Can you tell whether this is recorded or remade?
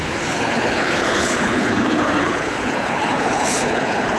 remade